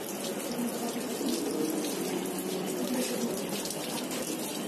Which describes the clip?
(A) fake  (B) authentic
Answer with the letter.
B